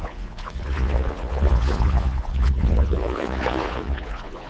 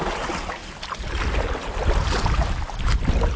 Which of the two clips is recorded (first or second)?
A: second